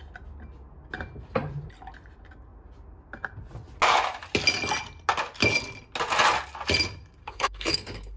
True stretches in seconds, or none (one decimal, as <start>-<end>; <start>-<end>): 0.0-7.2